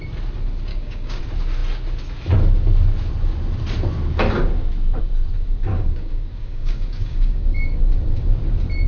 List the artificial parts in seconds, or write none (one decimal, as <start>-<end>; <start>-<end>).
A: 0.7-1.2; 5.7-7.8